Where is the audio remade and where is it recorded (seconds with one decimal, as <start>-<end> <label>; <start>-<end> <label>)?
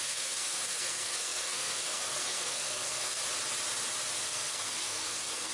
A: 0.0-3.2 remade; 3.2-4.2 recorded; 4.2-5.5 remade